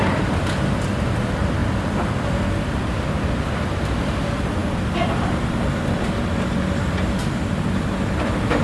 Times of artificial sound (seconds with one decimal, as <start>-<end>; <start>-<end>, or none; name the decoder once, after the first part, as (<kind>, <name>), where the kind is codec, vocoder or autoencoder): none